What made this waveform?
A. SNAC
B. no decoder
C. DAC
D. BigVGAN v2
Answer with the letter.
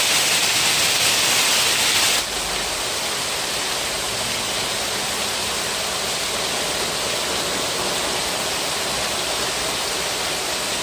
B